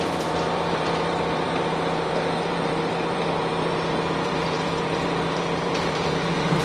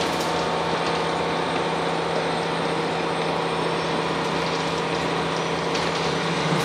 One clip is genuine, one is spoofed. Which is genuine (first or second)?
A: second